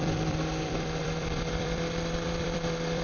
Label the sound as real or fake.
fake